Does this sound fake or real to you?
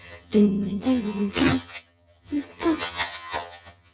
fake